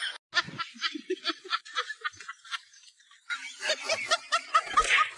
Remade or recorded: recorded